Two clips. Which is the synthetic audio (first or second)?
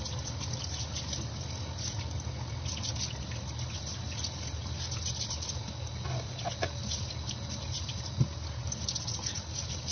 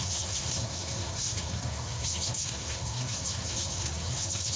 second